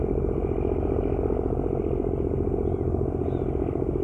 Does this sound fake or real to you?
real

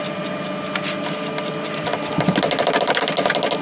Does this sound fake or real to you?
real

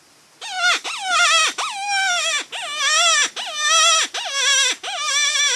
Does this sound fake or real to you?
real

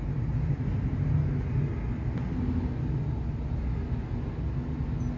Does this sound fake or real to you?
real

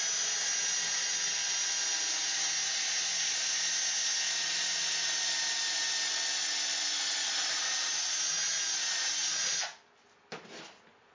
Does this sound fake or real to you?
real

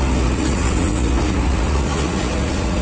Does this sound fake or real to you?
fake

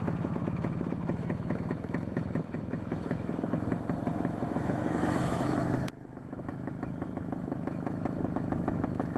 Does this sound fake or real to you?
fake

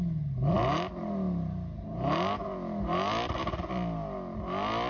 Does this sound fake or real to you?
real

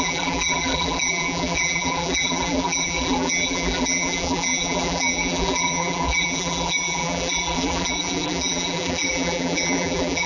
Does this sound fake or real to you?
fake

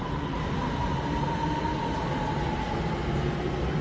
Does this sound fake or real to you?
real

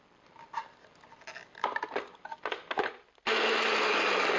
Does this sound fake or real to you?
real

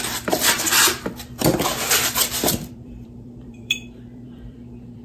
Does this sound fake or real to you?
fake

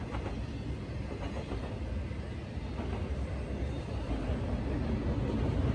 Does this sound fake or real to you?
real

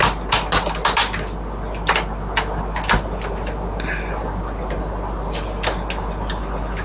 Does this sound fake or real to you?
real